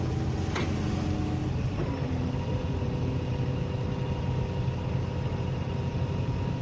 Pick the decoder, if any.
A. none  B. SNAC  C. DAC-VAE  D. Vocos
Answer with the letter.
A